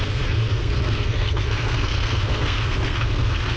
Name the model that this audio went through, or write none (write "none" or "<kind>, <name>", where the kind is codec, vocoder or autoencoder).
codec, SNAC